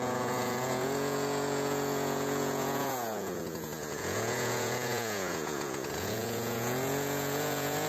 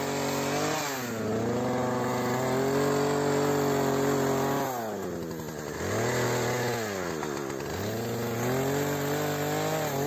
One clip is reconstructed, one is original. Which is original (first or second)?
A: second